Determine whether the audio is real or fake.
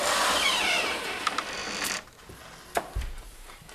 real